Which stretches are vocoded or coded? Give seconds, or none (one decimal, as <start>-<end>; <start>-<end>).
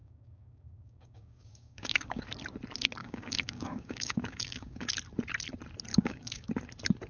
0.0-2.2; 3.0-4.9; 5.9-6.5